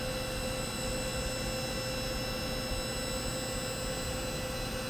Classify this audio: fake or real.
real